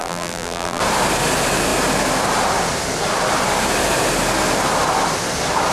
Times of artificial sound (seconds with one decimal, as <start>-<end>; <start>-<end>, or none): 0.0-0.8